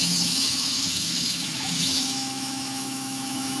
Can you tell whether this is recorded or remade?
remade